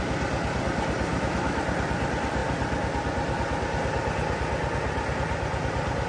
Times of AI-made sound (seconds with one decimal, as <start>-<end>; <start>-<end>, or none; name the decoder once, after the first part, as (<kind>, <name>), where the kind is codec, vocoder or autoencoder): 1.1-1.6 (autoencoder, DAC-VAE)